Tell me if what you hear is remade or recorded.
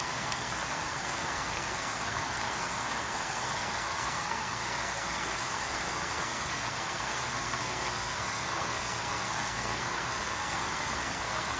remade